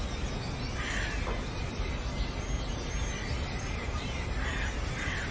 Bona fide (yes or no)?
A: yes